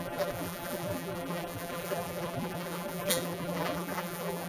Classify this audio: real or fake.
fake